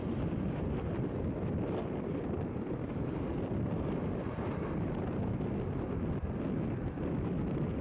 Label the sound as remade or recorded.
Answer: recorded